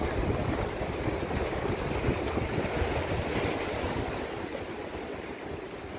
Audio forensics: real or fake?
real